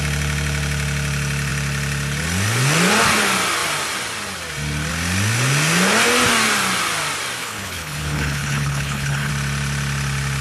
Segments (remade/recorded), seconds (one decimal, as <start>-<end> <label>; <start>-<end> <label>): 0.0-7.4 recorded; 7.4-9.3 remade; 9.3-10.4 recorded